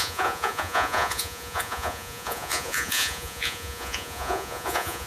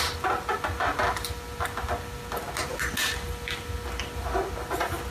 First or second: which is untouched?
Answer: second